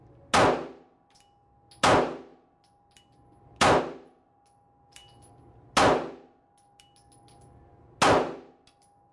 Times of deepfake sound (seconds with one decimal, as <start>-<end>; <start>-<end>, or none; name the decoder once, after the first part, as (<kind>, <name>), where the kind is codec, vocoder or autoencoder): none